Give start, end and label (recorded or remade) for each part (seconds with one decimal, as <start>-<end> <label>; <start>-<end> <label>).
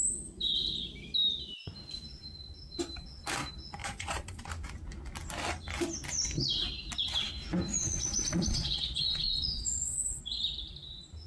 0.0-3.8 recorded; 3.8-4.5 remade; 4.5-7.7 recorded; 7.7-10.2 remade; 10.2-11.3 recorded